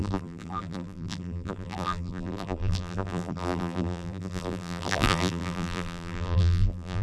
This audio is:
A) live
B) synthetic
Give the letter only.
B